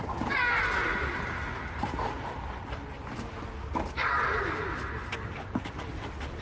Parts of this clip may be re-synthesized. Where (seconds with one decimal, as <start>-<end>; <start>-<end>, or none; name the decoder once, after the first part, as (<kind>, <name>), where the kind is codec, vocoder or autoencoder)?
0.9-2.9 (vocoder, BigVGAN v2)